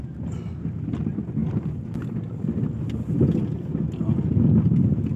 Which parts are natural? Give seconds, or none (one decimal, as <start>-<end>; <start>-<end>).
0.0-5.2